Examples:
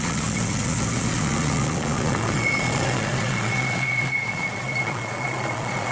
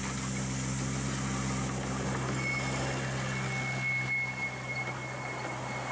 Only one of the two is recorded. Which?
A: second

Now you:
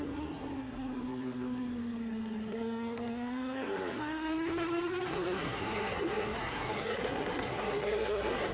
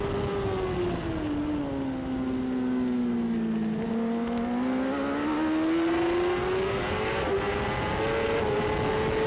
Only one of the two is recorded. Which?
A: second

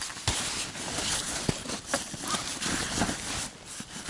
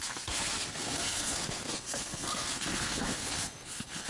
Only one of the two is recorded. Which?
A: first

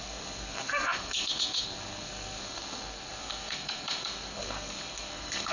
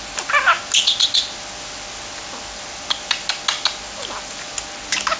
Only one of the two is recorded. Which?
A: second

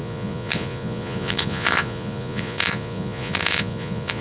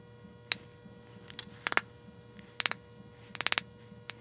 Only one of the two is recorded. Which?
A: second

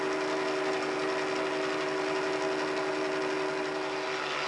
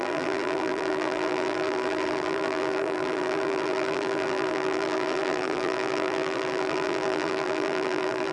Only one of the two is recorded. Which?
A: first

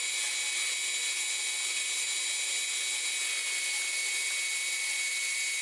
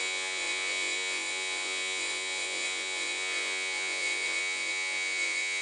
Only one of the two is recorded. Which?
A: first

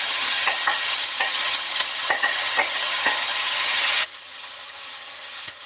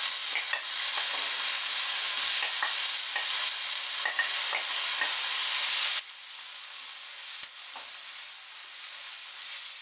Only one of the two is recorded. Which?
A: second